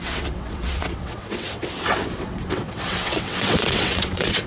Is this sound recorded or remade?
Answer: remade